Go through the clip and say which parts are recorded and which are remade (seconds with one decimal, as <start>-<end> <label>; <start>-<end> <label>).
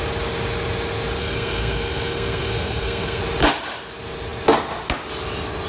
0.0-1.2 recorded; 1.2-3.2 remade; 3.2-5.7 recorded